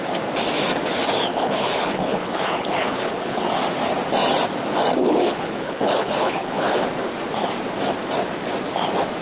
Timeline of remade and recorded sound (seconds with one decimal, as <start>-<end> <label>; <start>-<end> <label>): 0.0-1.3 recorded; 1.3-3.6 remade; 3.6-5.0 recorded; 5.0-6.9 remade; 6.9-9.2 recorded